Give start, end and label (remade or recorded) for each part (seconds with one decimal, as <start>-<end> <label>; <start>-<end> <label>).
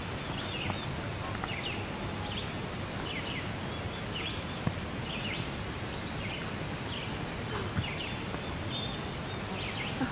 0.0-10.1 recorded